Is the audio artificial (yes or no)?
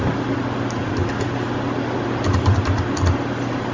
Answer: no